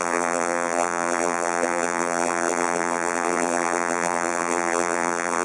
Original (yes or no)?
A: no